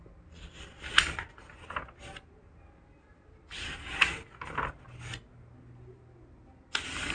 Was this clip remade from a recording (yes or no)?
no